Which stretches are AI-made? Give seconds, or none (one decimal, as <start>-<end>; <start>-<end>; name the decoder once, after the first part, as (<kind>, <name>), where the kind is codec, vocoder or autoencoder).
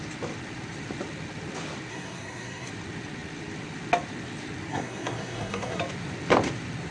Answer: 1.9-2.7 (codec, SNAC); 4.7-5.8